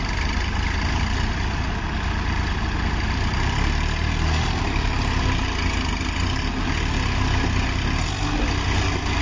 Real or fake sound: real